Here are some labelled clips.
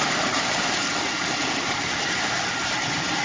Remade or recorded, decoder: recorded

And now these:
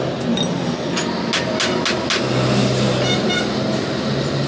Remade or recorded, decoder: recorded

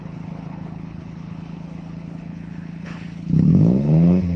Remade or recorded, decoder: remade, codec, HILCodec